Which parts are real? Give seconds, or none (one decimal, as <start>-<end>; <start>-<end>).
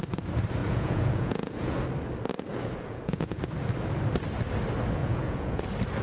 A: 0.0-0.6; 1.8-2.5; 3.4-5.0; 5.6-6.0